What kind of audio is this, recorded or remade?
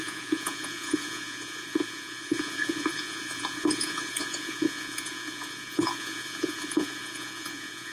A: remade